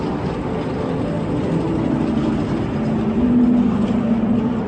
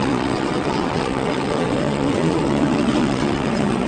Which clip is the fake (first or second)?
second